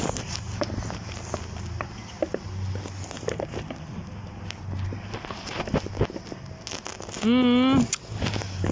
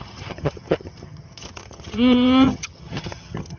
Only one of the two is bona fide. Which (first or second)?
first